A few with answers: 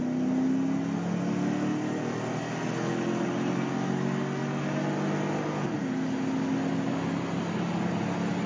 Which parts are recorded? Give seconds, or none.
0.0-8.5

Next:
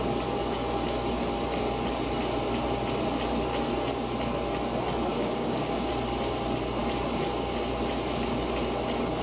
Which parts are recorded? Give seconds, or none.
0.0-5.1; 5.9-9.2

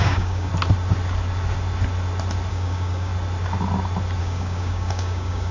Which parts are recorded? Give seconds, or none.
0.5-2.5; 3.1-4.2

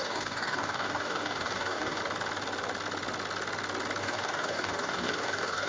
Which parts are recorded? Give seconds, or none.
2.0-4.0

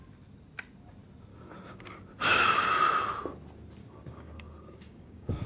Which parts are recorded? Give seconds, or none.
0.0-1.3; 1.8-3.8